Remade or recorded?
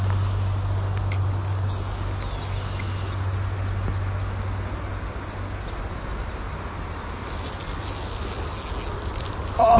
recorded